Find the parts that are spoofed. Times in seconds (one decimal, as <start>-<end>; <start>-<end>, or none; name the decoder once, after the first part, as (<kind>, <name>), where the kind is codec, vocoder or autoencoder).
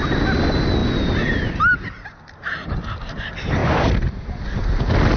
none